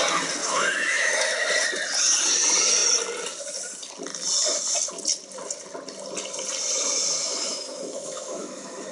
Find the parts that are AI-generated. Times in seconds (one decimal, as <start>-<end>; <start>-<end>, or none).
0.4-1.1; 7.2-8.9